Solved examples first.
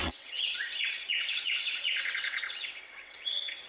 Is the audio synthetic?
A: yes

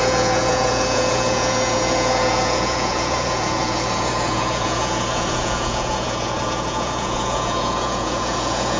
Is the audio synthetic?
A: yes